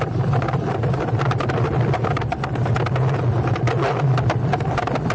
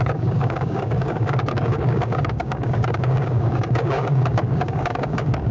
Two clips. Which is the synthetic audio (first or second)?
second